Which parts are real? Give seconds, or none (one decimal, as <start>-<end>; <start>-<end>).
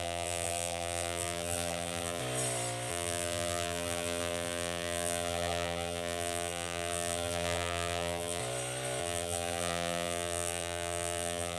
2.2-2.9; 8.4-9.0